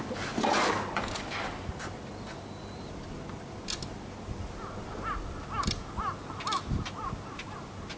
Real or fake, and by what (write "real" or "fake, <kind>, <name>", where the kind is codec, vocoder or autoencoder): real